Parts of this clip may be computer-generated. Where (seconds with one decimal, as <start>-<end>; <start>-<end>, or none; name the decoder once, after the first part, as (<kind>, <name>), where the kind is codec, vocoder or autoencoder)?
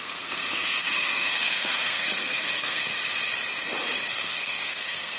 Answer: 0.0-2.9 (codec, SNAC); 4.1-5.2